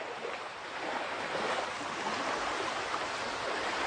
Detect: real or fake fake